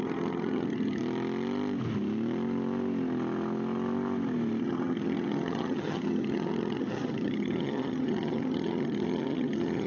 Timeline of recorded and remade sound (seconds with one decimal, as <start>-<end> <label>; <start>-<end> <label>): 0.0-1.0 remade; 1.0-4.6 recorded; 4.6-9.9 remade